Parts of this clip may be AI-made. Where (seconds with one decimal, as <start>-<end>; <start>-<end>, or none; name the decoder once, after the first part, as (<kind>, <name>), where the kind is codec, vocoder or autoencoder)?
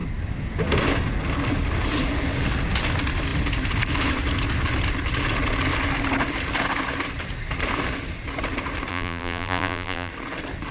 8.9-10.1 (vocoder, BigVGAN v2)